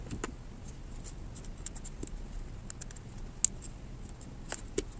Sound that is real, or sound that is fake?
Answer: real